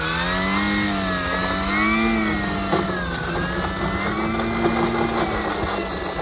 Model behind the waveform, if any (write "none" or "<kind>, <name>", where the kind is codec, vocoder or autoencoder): none